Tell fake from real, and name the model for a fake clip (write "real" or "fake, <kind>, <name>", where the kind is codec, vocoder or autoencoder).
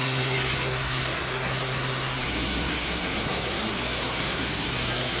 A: fake, codec, SNAC